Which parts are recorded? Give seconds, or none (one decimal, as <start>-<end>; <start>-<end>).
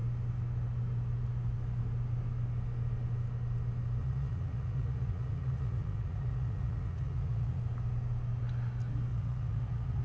0.0-4.0; 7.6-9.1